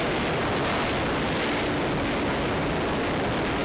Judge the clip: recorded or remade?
recorded